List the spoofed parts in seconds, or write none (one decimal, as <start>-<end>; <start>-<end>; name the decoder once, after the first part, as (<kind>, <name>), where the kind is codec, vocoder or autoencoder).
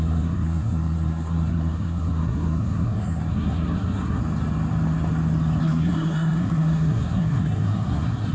0.0-4.2 (codec, SNAC); 5.6-8.3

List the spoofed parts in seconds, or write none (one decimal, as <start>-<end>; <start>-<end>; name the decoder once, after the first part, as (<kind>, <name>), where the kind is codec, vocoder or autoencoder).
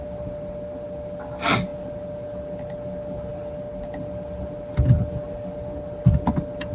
none